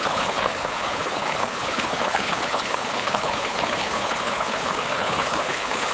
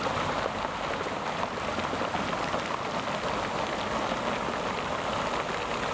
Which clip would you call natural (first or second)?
second